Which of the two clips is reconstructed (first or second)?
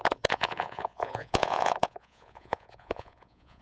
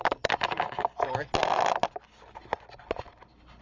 first